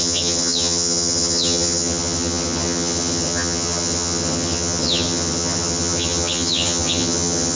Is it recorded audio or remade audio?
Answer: remade